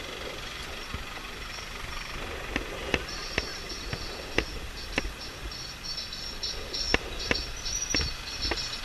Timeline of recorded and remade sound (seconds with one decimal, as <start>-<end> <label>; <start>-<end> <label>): 0.0-8.8 recorded